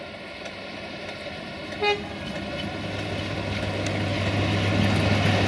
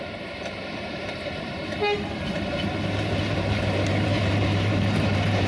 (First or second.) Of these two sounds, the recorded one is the first